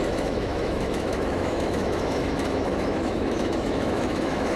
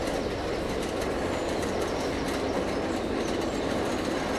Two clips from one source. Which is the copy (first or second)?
first